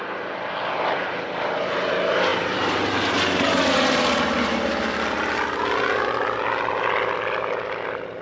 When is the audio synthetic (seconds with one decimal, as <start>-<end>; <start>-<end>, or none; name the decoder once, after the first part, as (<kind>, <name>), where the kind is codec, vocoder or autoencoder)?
2.3-4.1 (vocoder, BigVGAN v2)